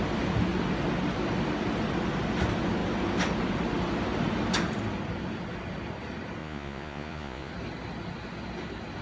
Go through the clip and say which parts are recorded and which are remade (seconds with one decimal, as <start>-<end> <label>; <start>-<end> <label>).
0.0-6.4 recorded; 6.4-7.5 remade; 7.5-9.0 recorded